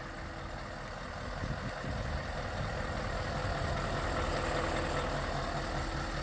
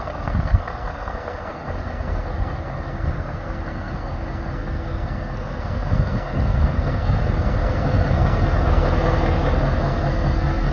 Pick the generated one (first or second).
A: second